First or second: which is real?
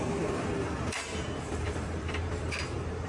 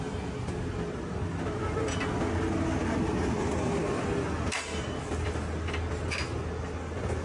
second